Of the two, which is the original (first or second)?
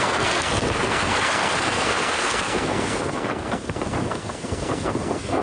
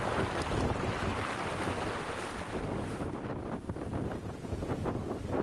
second